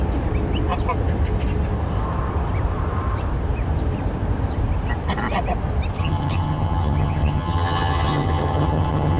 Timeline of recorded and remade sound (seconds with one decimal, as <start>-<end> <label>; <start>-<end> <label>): 0.0-6.0 recorded; 6.0-9.2 remade